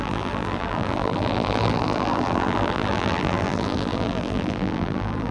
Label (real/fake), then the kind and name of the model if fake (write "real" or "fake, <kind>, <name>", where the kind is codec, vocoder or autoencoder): fake, vocoder, BigVGAN v2